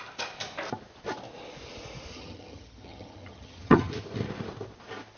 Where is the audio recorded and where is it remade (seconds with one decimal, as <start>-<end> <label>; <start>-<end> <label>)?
0.0-2.1 recorded; 2.1-3.9 remade; 3.9-5.2 recorded